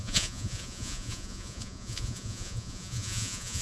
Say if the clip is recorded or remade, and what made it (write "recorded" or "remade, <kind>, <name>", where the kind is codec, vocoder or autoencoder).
remade, vocoder, Vocos